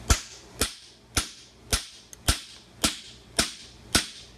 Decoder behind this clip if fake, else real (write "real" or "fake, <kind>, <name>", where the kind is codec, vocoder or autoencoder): real